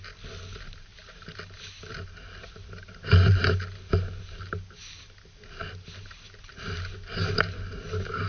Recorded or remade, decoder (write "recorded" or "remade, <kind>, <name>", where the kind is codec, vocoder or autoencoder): recorded